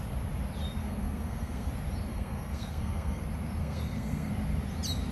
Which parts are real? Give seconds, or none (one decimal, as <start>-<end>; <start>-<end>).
0.0-0.8; 1.7-2.1; 3.2-3.6; 4.3-5.1